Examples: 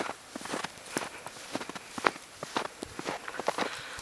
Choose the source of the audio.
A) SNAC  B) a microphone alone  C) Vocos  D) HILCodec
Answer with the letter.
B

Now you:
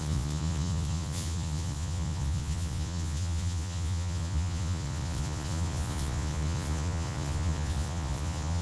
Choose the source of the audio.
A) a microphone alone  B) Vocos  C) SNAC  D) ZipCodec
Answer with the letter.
B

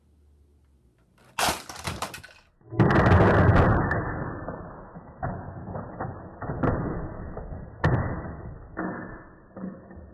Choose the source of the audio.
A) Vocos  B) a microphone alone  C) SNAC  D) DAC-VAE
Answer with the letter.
B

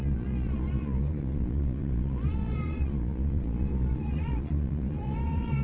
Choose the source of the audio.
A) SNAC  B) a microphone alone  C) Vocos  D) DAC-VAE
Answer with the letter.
C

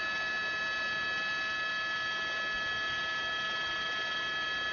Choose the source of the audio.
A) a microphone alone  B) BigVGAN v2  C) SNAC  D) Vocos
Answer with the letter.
A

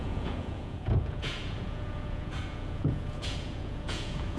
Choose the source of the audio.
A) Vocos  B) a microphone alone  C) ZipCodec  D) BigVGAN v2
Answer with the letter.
A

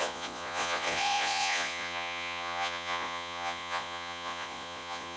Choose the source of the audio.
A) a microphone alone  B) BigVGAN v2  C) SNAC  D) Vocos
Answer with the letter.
D